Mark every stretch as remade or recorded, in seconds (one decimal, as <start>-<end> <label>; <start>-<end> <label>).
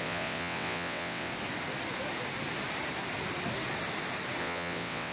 0.0-1.3 remade; 1.3-4.4 recorded; 4.4-5.1 remade